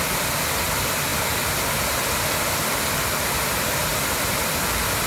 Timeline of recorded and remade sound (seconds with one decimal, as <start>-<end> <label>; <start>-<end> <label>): 0.0-5.1 recorded